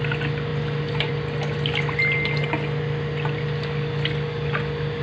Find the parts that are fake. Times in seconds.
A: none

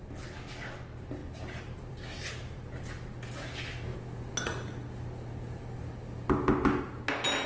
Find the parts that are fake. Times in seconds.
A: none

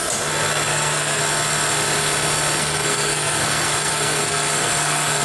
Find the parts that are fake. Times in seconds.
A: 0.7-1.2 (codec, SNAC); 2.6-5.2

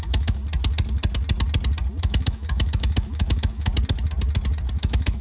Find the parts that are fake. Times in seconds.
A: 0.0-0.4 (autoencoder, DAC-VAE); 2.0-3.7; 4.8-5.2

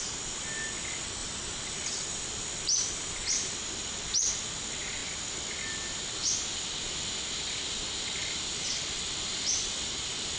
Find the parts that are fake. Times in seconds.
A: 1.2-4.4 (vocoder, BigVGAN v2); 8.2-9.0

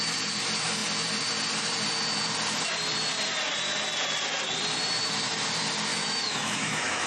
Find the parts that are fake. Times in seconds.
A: 5.9-7.1 (autoencoder, DAC-VAE)

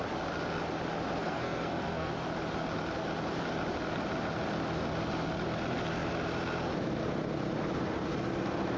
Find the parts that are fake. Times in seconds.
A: 1.2-2.1 (codec, SNAC)

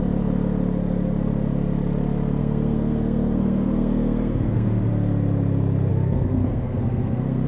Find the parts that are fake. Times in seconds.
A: 2.4-4.9 (codec, SNAC); 5.9-7.5